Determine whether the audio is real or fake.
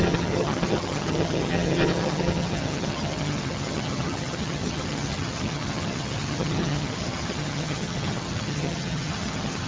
fake